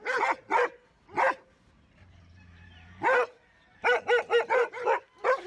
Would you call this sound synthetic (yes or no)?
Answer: no